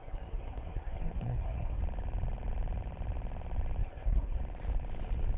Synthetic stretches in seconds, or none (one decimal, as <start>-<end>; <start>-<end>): 0.0-1.8; 3.8-4.4